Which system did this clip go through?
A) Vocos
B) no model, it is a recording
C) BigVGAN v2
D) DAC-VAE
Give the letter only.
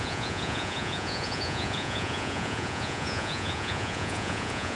A